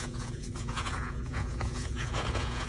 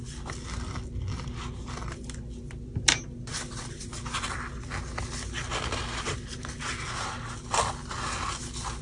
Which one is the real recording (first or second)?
second